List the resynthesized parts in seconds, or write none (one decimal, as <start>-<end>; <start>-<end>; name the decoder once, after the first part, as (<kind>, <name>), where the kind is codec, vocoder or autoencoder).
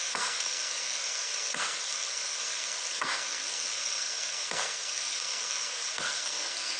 0.0-6.8 (codec, SNAC)